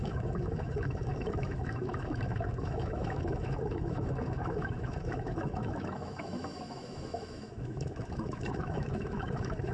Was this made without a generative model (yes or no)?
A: no